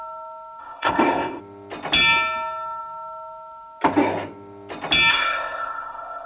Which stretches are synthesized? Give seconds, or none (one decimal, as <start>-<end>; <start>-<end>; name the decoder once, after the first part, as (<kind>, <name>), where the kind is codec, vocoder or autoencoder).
0.6-1.4 (codec, ZipCodec); 5.1-6.3